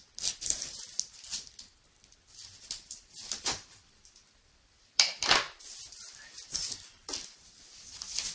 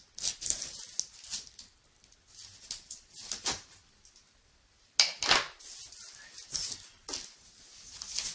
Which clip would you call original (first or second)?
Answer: second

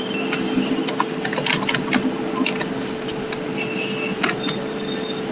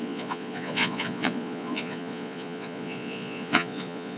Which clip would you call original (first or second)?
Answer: first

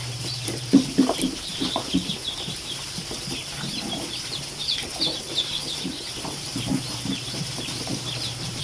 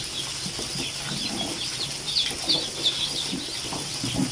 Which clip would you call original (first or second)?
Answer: second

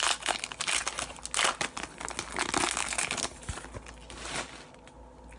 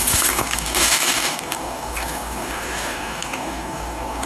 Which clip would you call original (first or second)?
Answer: first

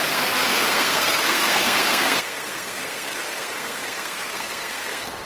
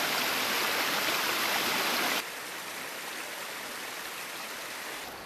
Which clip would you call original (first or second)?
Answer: second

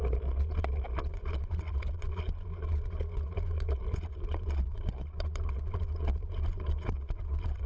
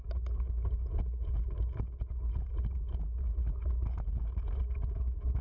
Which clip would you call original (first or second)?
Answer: second